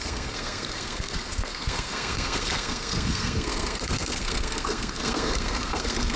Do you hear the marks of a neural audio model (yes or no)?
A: yes